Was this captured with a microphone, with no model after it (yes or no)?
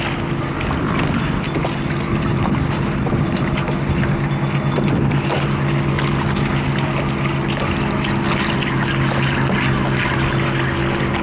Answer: yes